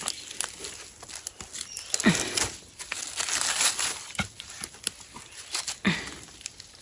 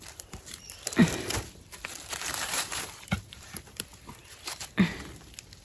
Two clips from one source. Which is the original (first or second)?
first